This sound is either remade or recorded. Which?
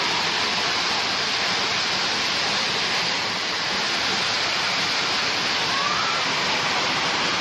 recorded